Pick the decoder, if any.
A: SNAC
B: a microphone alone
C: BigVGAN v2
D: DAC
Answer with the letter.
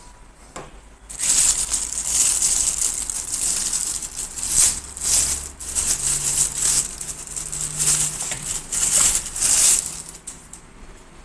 B